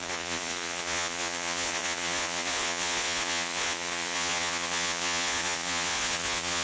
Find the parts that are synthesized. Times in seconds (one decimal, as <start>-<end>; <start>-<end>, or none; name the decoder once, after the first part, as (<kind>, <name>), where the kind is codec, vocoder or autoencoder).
0.0-6.6 (vocoder, Vocos)